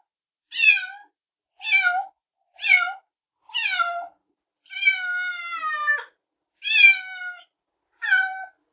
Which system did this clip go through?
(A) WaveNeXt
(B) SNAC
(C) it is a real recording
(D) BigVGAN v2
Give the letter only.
C